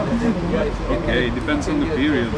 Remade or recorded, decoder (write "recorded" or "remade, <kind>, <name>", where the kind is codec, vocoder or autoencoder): recorded